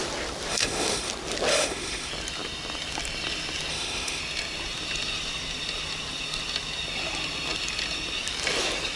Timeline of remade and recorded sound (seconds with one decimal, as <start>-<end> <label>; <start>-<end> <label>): 0.0-0.5 recorded; 0.5-1.1 remade; 1.1-1.5 recorded; 1.5-2.1 remade; 2.1-3.7 recorded; 3.7-4.2 remade; 4.2-9.0 recorded

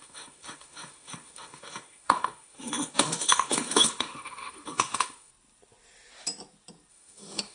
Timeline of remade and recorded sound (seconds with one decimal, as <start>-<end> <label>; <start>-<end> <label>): 0.0-5.3 remade; 5.3-6.9 recorded; 6.9-7.5 remade

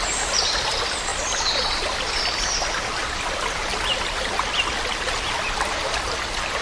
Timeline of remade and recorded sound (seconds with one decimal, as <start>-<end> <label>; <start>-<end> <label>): 0.0-6.6 recorded

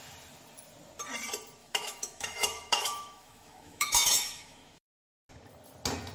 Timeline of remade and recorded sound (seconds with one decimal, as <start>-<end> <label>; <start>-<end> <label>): 0.0-1.6 recorded; 1.6-5.3 remade; 5.3-6.1 recorded

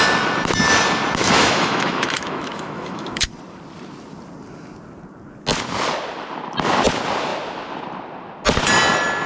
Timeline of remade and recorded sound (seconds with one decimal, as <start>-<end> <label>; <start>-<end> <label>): 0.0-1.2 recorded; 1.2-3.3 remade; 3.3-9.3 recorded

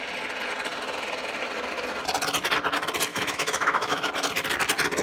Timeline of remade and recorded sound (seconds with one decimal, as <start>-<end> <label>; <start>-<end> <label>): 0.0-3.1 recorded; 3.1-4.1 remade; 4.1-5.0 recorded